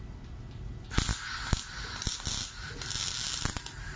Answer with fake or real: real